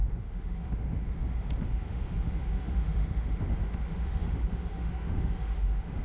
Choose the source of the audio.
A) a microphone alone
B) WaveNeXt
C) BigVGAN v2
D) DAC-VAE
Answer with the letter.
D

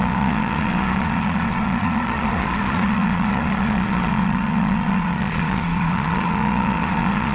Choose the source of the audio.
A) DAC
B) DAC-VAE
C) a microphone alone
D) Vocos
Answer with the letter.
D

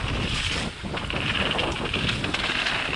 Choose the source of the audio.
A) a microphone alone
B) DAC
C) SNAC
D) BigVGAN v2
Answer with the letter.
A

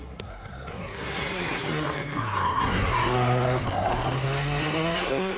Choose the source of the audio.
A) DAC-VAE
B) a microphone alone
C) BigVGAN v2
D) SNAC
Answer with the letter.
D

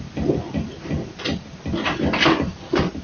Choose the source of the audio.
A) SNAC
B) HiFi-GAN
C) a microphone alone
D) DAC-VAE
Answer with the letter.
C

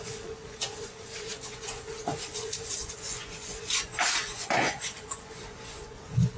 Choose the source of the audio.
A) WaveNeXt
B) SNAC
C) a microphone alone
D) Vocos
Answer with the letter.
D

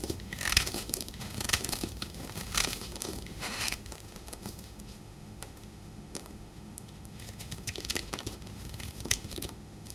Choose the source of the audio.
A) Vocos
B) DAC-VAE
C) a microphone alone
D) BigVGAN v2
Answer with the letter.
B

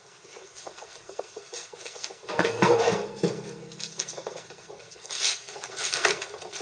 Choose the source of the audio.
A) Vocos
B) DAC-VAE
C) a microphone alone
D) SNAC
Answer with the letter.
D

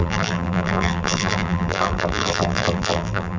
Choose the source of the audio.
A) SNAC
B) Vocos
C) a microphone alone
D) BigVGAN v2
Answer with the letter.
D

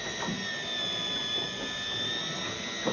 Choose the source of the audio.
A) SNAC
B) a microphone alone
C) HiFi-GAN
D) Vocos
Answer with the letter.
B